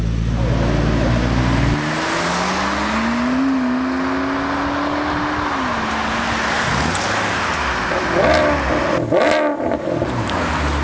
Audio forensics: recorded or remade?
recorded